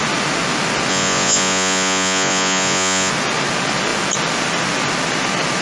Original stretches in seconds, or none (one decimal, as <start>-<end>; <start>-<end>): 0.0-0.9; 3.1-5.6